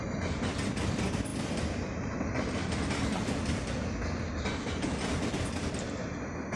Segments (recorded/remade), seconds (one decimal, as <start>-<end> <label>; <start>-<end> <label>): 0.0-6.6 recorded